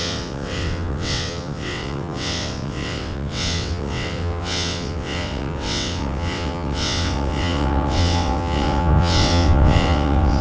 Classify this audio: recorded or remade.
remade